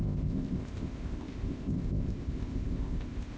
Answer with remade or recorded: remade